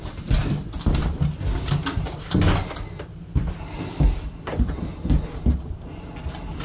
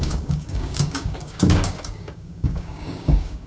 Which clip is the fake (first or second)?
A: second